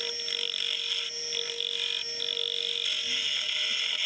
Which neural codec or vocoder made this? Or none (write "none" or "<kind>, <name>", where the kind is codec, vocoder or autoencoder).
none